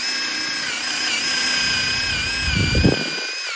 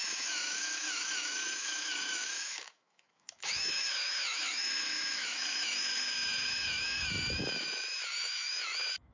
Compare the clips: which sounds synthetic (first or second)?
second